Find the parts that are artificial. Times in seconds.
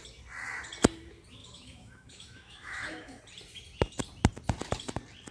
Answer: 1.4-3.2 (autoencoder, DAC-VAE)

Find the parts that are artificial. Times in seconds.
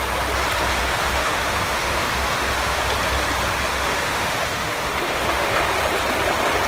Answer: 0.8-2.8 (autoencoder, DAC-VAE); 3.7-5.6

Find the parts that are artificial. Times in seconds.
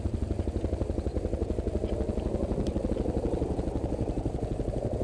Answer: none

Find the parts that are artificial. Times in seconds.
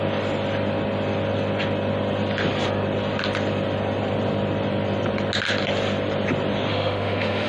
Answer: 6.7-7.5 (autoencoder, DAC-VAE)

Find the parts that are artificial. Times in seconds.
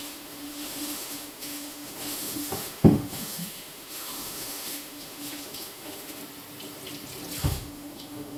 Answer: 0.0-6.2 (autoencoder, DAC-VAE); 7.4-8.4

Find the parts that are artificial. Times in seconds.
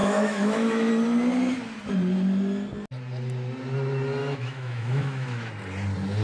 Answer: 0.0-0.9 (autoencoder, DAC-VAE); 4.2-5.5